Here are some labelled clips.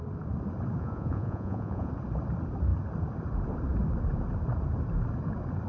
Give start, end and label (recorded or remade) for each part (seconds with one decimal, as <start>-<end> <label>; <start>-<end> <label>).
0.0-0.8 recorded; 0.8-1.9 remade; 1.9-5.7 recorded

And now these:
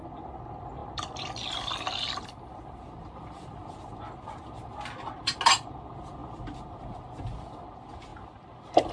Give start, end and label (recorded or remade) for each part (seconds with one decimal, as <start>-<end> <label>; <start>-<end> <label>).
0.0-8.9 recorded

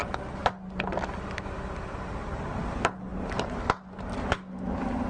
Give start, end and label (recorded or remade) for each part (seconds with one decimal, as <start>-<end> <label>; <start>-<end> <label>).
0.0-5.1 recorded